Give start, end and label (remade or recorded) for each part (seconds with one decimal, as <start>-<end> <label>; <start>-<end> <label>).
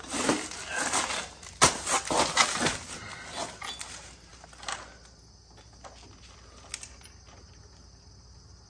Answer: 0.0-8.7 recorded